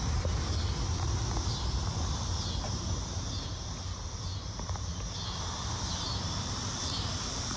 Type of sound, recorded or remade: remade